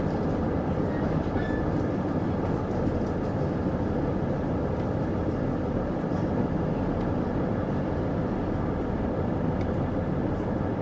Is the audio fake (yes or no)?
no